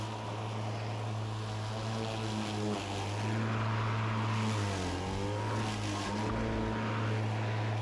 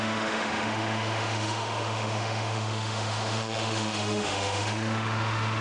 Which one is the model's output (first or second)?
second